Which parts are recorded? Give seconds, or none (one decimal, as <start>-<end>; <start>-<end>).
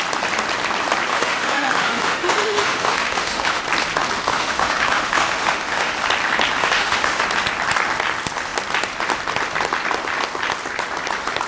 0.0-1.1; 3.6-4.3; 5.9-6.6; 7.2-11.5